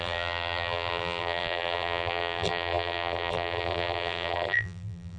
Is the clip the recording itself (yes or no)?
no